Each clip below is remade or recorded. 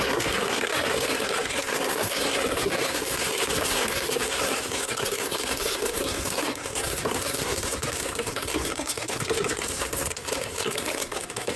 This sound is remade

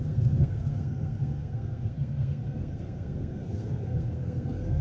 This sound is remade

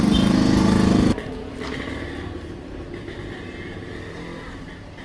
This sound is recorded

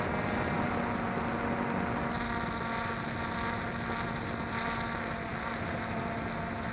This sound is recorded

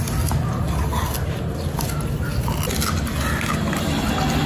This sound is recorded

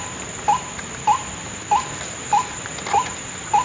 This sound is recorded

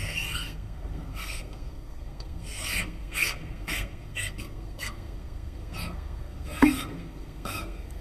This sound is remade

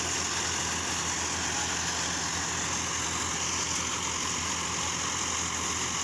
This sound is recorded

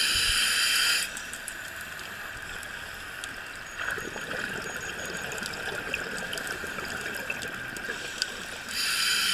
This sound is recorded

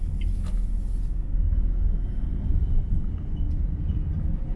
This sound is recorded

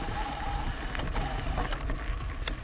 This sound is recorded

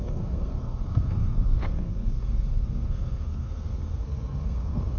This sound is remade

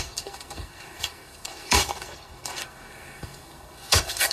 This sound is remade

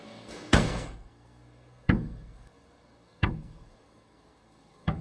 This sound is remade